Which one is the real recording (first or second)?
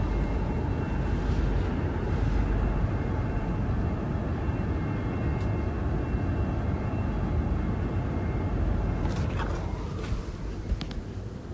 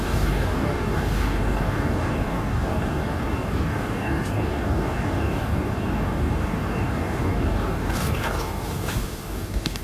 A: first